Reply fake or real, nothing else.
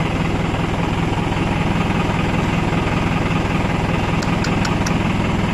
real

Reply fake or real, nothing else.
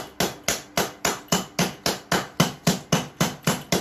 real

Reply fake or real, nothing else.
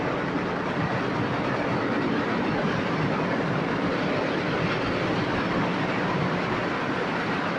fake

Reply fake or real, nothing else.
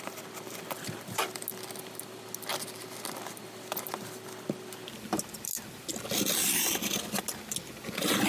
real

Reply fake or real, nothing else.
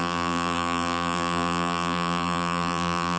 fake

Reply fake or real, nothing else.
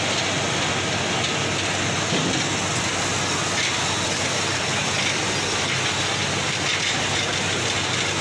real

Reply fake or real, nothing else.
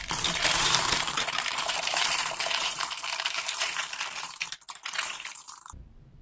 fake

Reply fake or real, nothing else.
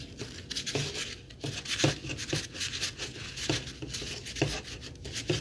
real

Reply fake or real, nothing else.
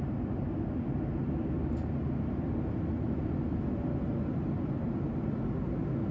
real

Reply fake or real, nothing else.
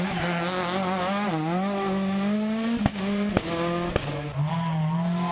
real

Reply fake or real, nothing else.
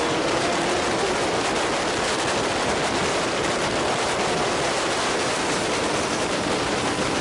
real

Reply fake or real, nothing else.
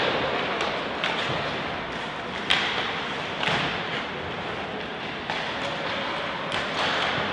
fake